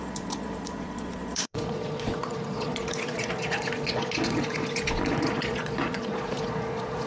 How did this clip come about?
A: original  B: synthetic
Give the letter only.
B